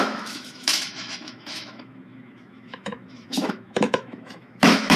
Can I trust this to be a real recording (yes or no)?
no